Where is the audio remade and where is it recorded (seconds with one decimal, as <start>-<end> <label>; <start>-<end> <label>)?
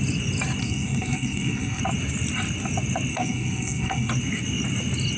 0.0-0.6 recorded; 0.6-1.8 remade; 1.8-3.1 recorded; 3.1-4.1 remade; 4.1-5.2 recorded